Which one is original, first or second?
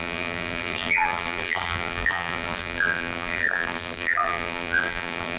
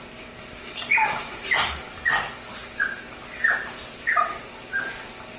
second